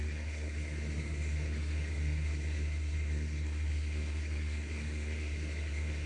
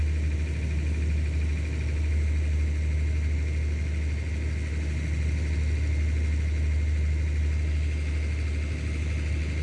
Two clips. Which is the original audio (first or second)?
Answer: second